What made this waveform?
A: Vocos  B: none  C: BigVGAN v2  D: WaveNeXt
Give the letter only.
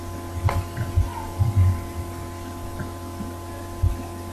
B